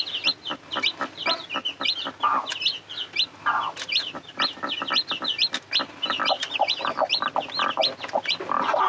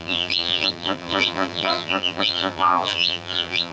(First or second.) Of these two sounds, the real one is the first